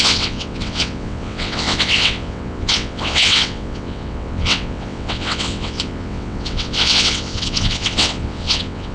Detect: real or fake fake